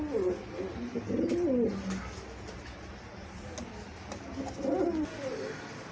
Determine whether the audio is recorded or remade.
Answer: recorded